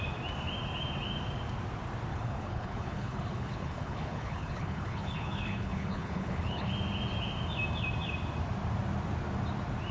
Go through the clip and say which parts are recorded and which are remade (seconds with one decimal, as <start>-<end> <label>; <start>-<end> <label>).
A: 0.0-2.1 recorded; 2.1-6.7 remade; 6.7-9.9 recorded